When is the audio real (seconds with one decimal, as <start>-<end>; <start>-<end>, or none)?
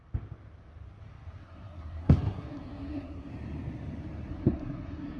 0.0-1.4; 3.3-4.3